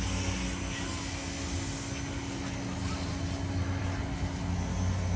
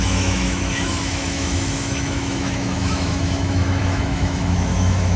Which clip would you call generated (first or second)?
second